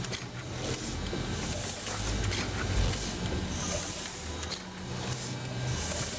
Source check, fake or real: real